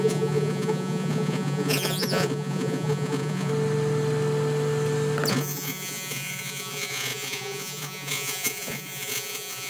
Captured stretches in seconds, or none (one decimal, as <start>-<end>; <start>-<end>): 3.5-5.3

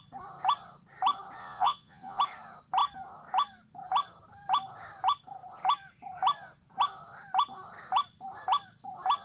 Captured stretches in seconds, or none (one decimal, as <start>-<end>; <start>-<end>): 0.0-1.4; 2.2-9.2

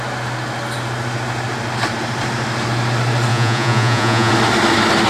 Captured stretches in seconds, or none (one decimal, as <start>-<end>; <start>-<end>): 0.0-3.3; 4.3-5.1

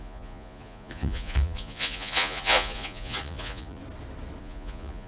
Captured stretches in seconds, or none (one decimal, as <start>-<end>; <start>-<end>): 3.8-4.4

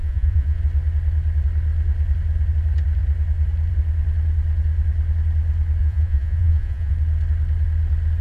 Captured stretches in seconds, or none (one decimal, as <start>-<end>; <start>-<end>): 0.6-5.8; 6.9-8.2